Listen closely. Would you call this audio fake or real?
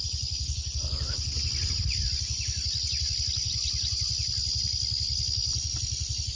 real